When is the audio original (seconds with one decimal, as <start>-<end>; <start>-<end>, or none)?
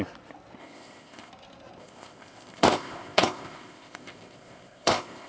0.0-0.6; 1.3-1.8